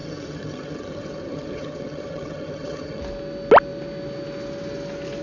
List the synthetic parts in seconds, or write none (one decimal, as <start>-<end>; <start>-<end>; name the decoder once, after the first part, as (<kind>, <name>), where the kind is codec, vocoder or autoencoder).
0.0-3.0 (vocoder, HiFi-GAN)